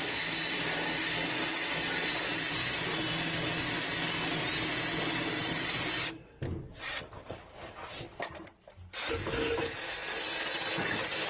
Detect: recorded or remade recorded